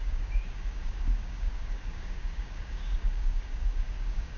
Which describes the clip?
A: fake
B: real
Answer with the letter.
A